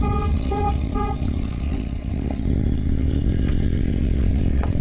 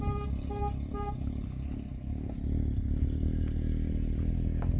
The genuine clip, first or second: second